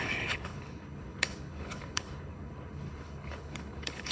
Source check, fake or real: fake